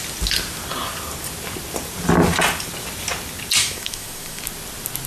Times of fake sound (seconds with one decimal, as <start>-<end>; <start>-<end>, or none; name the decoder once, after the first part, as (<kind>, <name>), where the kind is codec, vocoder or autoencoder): 3.6-4.4 (autoencoder, DAC-VAE)